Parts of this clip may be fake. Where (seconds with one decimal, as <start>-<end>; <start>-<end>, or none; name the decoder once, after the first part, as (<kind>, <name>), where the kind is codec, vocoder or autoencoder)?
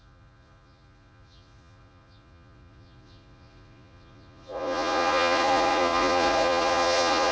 0.0-7.3 (vocoder, Vocos)